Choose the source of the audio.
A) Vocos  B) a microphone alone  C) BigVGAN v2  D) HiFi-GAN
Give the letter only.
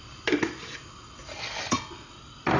B